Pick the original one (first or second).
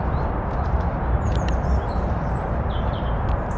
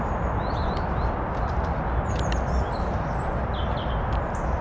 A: second